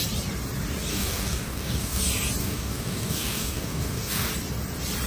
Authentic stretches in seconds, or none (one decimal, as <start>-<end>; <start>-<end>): 0.0-0.9; 2.0-2.4; 4.3-5.1